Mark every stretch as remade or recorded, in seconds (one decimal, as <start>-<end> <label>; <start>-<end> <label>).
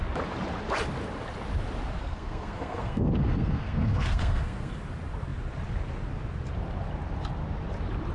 0.0-2.0 recorded; 2.0-4.7 remade; 4.7-8.1 recorded